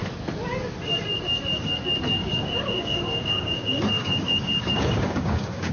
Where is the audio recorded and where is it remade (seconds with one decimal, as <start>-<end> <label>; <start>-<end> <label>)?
0.0-2.2 recorded; 2.2-5.7 remade